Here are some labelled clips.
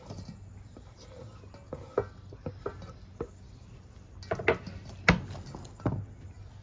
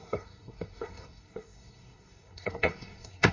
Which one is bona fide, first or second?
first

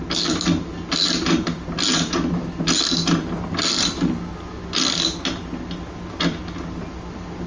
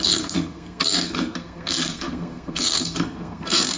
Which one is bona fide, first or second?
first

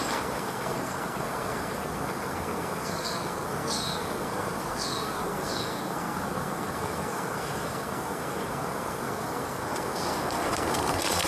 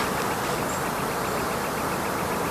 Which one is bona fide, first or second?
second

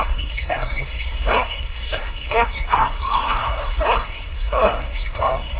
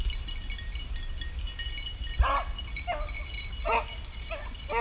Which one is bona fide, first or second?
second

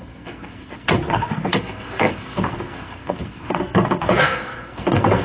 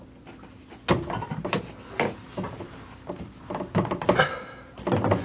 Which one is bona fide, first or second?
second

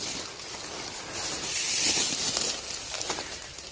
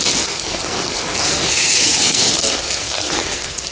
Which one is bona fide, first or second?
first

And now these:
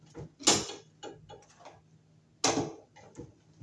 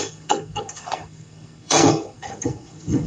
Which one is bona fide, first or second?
first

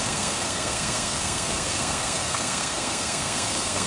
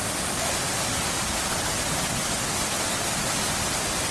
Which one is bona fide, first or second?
second